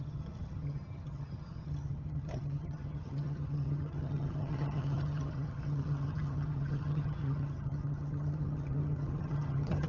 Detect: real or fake fake